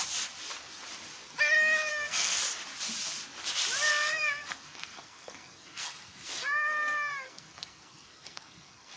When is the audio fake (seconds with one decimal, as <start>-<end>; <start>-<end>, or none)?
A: 1.9-2.4; 3.9-9.0